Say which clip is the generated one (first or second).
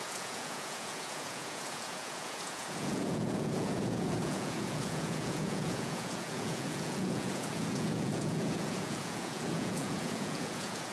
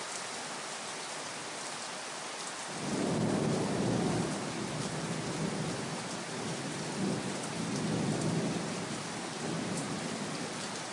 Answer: first